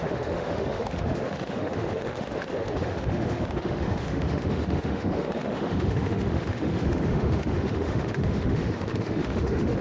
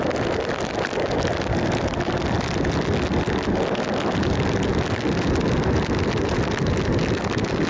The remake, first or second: first